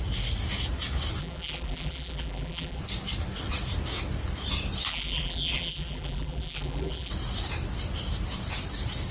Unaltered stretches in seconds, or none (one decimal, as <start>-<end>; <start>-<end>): 0.0-1.2; 2.8-4.9; 7.1-9.1